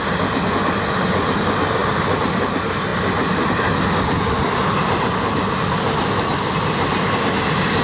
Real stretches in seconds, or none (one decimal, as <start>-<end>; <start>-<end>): 0.0-7.8